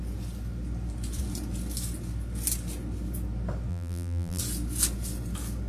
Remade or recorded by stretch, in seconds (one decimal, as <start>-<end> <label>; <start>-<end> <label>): 0.0-3.7 recorded; 3.7-4.4 remade; 4.4-5.7 recorded